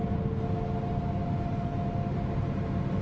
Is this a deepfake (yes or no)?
no